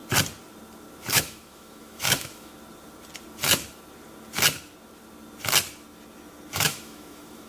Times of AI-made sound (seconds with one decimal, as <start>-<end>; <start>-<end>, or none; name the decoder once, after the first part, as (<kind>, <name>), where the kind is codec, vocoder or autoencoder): 1.1-2.5 (autoencoder, DAC-VAE); 6.5-7.5